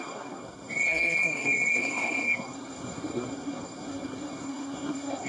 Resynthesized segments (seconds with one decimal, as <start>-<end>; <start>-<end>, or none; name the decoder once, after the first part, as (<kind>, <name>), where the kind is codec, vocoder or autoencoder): 0.0-5.3 (codec, SNAC)

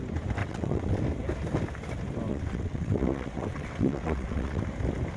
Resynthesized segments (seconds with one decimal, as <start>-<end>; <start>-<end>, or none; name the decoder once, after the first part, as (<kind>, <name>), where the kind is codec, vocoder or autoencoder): 0.4-1.0 (vocoder, WaveNeXt); 2.3-4.6

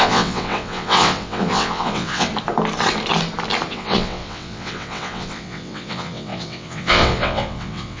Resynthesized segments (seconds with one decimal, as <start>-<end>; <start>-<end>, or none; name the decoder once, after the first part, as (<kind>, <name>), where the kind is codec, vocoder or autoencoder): 0.0-2.3 (vocoder, WaveNeXt); 3.7-8.0

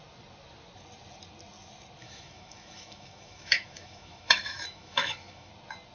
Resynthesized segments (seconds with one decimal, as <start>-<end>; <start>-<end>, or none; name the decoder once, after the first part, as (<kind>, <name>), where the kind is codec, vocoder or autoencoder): 2.0-5.5 (autoencoder, DAC-VAE)

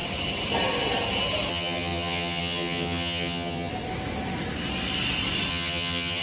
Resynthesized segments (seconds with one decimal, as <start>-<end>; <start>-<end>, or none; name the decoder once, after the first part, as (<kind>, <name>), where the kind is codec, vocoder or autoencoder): 1.5-3.7 (vocoder, HiFi-GAN); 5.5-6.2

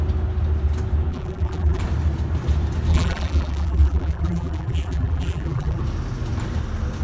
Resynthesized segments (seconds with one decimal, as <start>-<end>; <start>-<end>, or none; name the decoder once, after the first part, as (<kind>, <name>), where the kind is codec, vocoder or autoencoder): 1.1-1.8 (vocoder, BigVGAN v2); 2.9-5.8